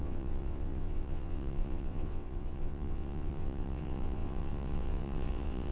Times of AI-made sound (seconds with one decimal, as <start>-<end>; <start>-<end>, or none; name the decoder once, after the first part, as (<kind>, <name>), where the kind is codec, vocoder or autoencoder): 0.0-5.7 (vocoder, WaveNeXt)